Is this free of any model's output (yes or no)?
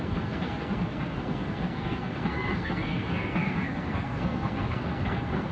no